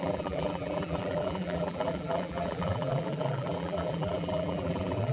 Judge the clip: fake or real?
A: fake